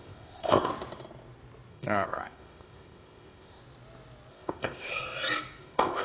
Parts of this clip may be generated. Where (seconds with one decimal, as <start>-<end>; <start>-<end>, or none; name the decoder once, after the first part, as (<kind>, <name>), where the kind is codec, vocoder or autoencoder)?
0.0-0.7 (codec, ZipCodec); 1.7-3.6; 4.3-4.9; 5.6-6.0